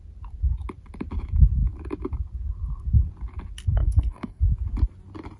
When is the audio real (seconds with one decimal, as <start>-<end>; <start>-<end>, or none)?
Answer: 0.0-3.8; 4.4-5.4